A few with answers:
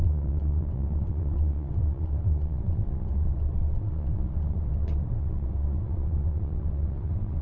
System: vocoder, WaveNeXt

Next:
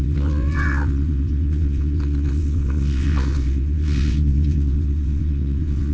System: vocoder, WaveNeXt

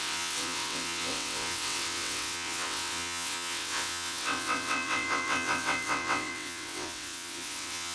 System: vocoder, WaveNeXt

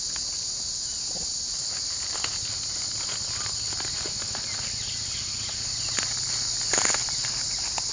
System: none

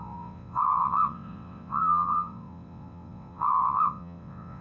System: vocoder, WaveNeXt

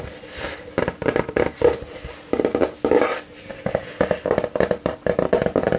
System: none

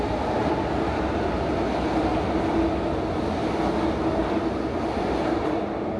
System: none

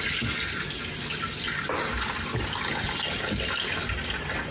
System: none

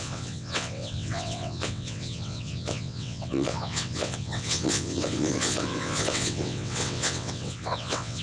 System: vocoder, WaveNeXt